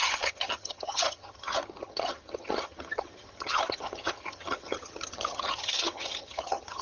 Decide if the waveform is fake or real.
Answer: fake